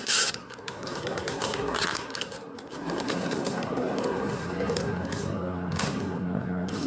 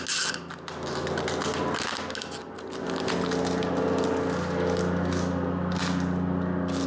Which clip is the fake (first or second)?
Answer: first